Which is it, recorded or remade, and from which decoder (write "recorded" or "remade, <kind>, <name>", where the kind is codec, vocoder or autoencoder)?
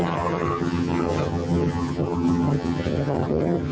remade, vocoder, HiFi-GAN